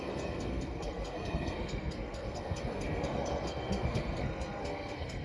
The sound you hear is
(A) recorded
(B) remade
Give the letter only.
B